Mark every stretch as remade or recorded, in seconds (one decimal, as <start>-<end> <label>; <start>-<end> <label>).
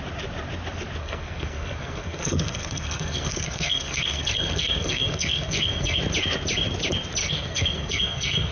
0.0-1.0 recorded; 1.0-6.0 remade; 6.0-7.2 recorded; 7.2-8.5 remade